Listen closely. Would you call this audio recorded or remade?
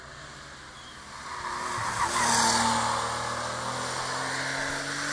recorded